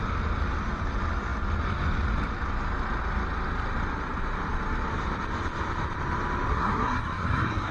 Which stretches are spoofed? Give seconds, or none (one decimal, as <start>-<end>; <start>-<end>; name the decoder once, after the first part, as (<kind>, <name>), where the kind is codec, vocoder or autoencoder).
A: 6.5-7.7 (codec, SNAC)